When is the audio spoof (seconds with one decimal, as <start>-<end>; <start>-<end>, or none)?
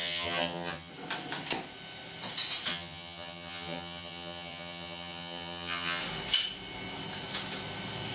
0.0-0.9; 2.7-6.0